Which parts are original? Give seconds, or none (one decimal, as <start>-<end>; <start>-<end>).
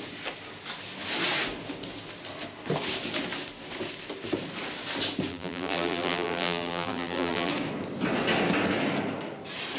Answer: 0.0-5.3; 7.5-9.8